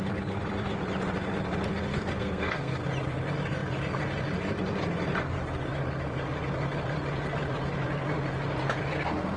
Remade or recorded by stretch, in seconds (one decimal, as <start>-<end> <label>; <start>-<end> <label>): 0.0-1.9 recorded; 1.9-2.8 remade; 2.8-9.4 recorded